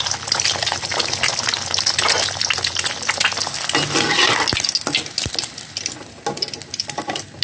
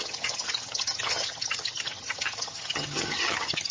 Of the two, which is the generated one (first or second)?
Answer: second